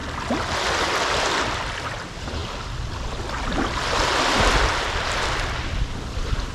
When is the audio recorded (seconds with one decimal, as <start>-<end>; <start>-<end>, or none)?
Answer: 0.0-6.5